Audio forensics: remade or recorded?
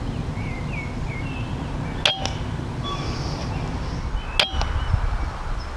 recorded